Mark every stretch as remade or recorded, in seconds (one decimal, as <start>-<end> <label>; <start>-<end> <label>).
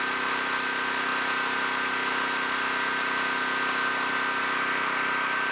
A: 0.0-5.5 recorded